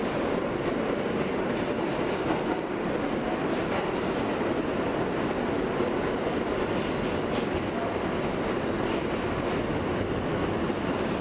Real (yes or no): yes